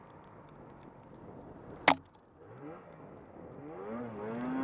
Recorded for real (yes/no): yes